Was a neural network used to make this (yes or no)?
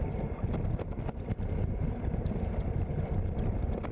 no